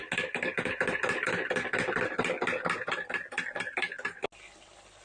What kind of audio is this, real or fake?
real